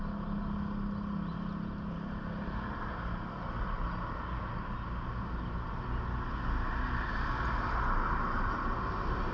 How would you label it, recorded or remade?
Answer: recorded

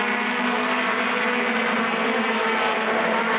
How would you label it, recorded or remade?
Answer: recorded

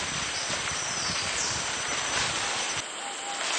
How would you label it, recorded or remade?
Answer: recorded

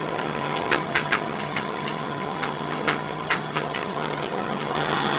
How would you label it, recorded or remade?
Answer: remade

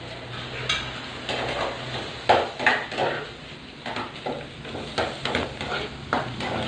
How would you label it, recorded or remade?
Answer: recorded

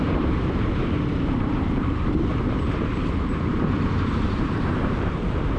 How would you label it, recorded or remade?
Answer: remade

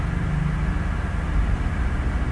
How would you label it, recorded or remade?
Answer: recorded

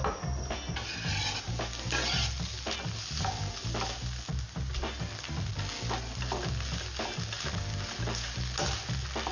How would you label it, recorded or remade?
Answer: recorded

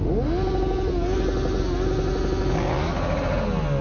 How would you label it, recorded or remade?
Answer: recorded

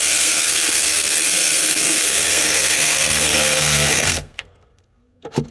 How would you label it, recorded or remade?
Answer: remade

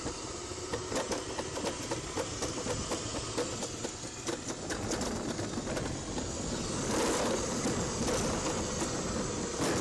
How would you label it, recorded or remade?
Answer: recorded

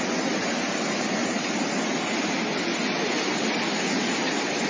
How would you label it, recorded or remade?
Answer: recorded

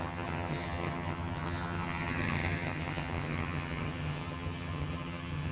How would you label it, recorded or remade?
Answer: remade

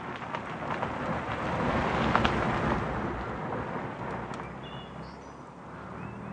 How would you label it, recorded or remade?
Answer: recorded